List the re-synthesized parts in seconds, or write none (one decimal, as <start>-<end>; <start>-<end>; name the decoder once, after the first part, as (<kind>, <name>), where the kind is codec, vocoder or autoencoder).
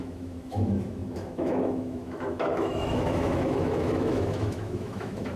0.0-5.4 (autoencoder, DAC-VAE)